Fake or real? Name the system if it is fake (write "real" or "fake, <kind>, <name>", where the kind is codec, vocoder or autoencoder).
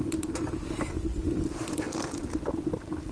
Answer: real